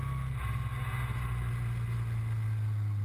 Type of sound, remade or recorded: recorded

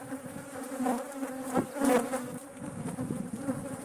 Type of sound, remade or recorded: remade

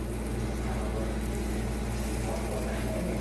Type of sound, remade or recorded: recorded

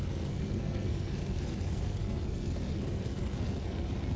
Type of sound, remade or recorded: remade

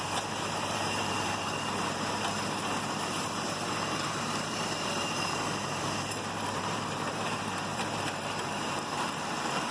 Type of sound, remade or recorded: remade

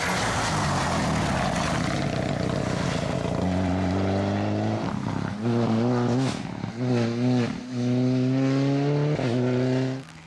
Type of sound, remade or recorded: recorded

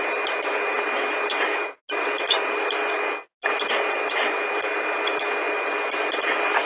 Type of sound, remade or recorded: recorded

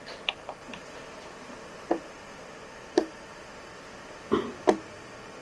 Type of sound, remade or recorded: recorded